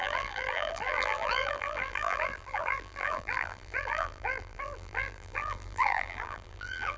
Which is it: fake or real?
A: fake